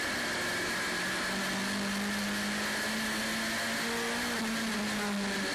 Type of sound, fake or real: real